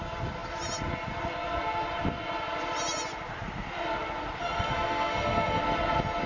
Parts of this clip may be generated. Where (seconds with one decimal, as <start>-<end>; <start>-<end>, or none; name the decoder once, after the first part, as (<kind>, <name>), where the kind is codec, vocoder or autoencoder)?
4.4-5.6 (codec, SNAC)